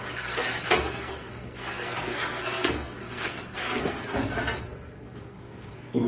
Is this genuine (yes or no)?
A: no